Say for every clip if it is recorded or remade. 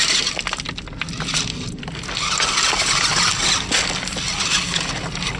recorded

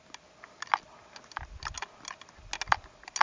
recorded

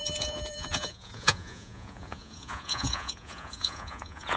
remade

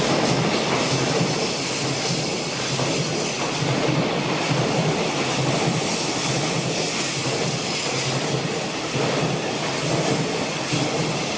recorded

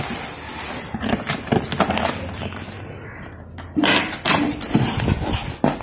recorded